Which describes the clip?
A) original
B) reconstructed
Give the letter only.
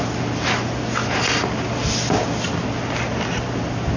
A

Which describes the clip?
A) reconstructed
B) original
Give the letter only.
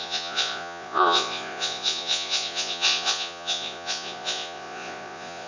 A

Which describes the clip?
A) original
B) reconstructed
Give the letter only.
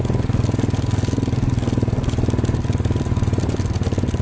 A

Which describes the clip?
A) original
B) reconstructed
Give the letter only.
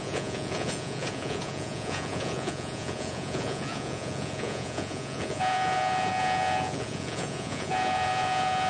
B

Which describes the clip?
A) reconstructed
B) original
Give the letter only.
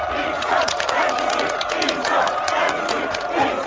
A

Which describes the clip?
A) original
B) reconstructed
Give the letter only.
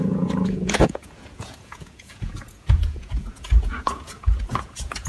B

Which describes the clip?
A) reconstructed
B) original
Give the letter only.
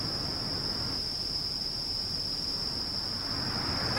B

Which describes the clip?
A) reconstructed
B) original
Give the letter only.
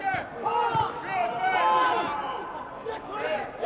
B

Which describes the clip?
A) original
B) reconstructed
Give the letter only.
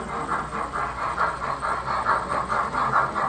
A